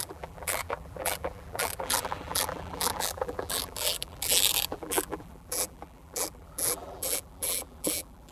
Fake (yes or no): yes